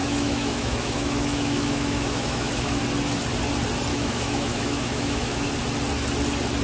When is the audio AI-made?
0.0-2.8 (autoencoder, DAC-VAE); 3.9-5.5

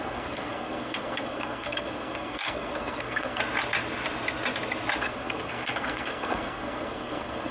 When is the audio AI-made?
0.0-3.4 (codec, SNAC); 5.0-7.5

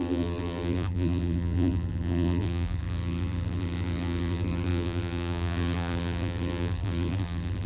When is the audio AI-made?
0.0-7.7 (vocoder, BigVGAN v2)

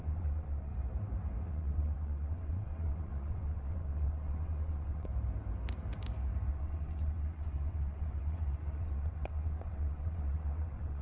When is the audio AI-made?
0.0-0.7 (vocoder, WaveNeXt); 1.5-5.1; 6.5-11.0

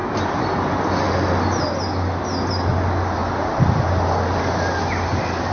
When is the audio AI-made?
none

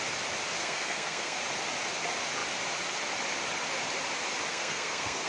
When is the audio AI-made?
0.6-1.4 (codec, SNAC); 4.5-5.3

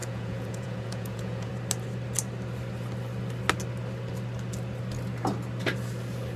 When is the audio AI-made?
0.0-1.5 (vocoder, Vocos)

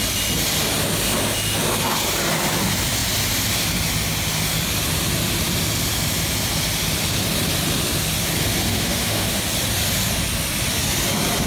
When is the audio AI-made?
8.7-9.4 (autoencoder, DAC-VAE)